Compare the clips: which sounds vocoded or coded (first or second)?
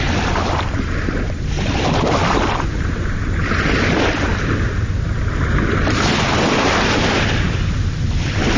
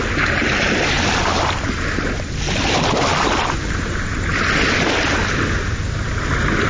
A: first